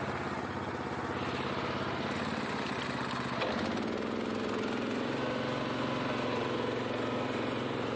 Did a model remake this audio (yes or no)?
no